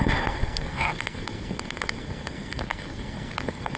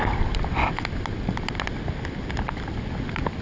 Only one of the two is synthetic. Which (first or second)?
first